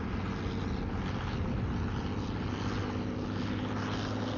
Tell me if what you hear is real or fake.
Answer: real